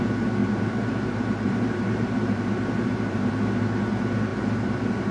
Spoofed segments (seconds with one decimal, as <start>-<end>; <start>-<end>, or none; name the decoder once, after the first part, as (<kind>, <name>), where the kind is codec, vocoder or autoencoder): 0.4-3.5 (vocoder, BigVGAN v2); 4.3-5.1

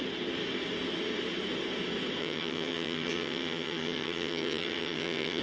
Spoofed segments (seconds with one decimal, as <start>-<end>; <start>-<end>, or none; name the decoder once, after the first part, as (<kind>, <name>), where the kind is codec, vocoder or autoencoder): 2.2-5.4 (vocoder, HiFi-GAN)

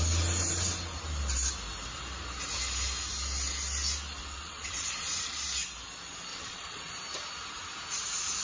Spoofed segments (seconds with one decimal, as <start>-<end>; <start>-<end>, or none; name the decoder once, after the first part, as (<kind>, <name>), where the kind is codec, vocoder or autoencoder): 4.2-4.9 (vocoder, WaveNeXt); 6.3-6.9